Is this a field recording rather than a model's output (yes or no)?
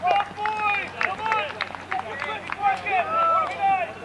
yes